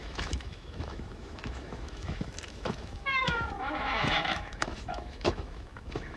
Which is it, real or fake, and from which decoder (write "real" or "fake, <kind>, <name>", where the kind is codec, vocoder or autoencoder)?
fake, autoencoder, DAC-VAE